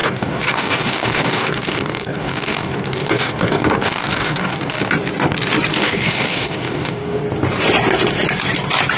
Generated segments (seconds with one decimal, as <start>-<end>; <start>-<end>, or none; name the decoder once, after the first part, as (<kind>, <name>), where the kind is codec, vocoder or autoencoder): 0.0-4.9 (codec, DAC); 5.7-7.2

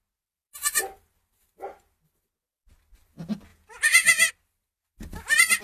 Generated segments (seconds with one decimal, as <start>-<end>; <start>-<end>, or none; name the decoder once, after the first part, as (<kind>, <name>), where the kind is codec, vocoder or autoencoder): 3.5-4.3 (vocoder, Vocos)

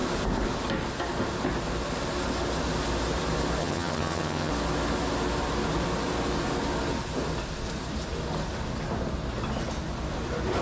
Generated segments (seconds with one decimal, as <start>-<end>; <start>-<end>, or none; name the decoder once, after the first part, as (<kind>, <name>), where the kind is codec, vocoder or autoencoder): 3.6-4.5 (vocoder, HiFi-GAN)

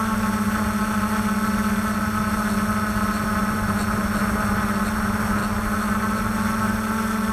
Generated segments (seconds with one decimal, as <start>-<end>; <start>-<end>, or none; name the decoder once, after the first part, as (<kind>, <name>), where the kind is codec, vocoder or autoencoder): none

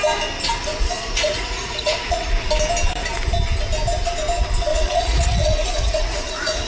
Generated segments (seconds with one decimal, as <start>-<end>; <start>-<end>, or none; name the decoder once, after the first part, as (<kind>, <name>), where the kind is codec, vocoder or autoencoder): 0.7-2.5 (vocoder, Vocos); 4.7-6.7